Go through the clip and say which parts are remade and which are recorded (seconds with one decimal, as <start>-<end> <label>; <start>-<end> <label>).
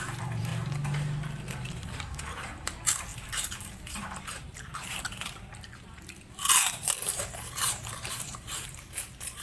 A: 0.0-0.5 remade; 0.5-1.7 recorded; 1.7-9.4 remade